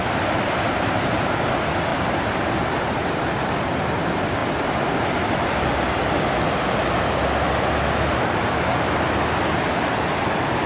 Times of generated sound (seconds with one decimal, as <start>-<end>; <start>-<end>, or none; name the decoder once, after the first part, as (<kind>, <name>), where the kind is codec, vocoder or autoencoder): 1.9-3.6 (vocoder, BigVGAN v2)